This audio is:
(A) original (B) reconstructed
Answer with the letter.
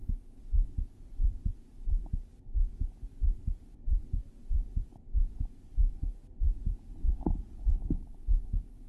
A